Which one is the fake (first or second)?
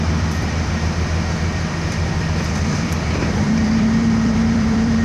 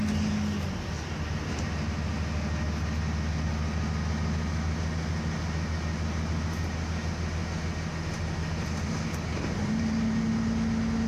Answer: first